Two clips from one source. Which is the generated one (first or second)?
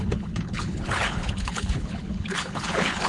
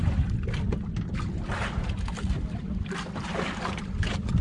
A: first